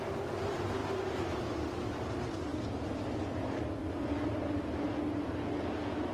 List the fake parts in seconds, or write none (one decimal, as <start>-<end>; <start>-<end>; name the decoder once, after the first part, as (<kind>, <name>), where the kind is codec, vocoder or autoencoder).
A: 2.5-4.9 (vocoder, BigVGAN v2)